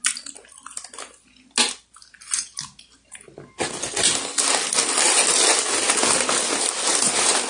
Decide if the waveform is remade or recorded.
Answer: recorded